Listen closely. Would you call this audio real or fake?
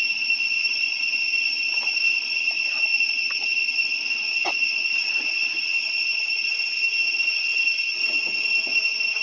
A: real